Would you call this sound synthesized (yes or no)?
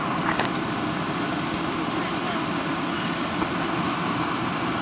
no